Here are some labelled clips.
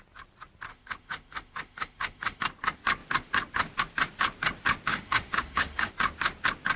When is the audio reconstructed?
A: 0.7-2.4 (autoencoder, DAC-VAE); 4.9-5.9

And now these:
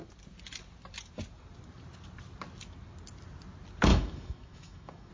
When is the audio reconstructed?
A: 3.9-5.1 (autoencoder, DAC-VAE)

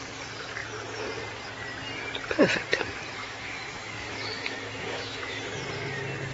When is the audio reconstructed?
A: 3.2-5.4 (autoencoder, DAC-VAE)

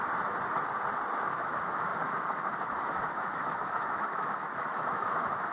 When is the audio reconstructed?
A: 1.2-5.5 (autoencoder, DAC-VAE)

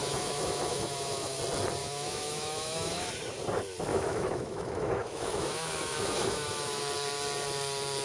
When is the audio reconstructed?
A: 0.0-1.4 (autoencoder, DAC-VAE); 1.8-3.1; 3.9-6.9

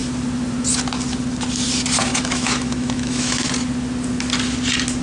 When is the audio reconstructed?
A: 2.1-3.5 (autoencoder, DAC-VAE)